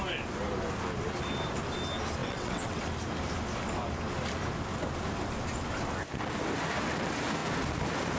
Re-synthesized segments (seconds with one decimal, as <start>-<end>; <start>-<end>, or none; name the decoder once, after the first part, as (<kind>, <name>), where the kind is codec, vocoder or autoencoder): 2.2-2.8 (vocoder, WaveNeXt)